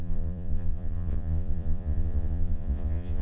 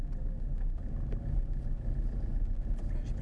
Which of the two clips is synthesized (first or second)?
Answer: first